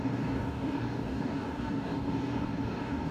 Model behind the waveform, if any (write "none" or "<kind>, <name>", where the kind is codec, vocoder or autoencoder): codec, DAC